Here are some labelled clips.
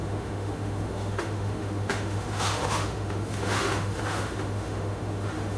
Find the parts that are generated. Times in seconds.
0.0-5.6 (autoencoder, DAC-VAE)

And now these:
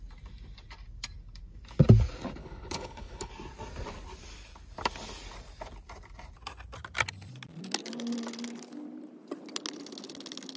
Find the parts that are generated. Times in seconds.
2.4-3.3 (codec, HILCodec)

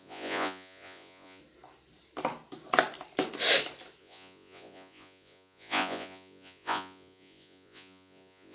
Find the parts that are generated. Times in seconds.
0.0-1.4 (vocoder, Vocos); 4.0-8.5

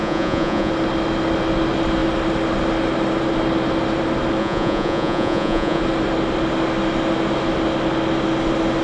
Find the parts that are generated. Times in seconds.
0.0-0.7 (vocoder, Vocos); 4.4-5.8